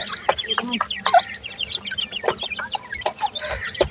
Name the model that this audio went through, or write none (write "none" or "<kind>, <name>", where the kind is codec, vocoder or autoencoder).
none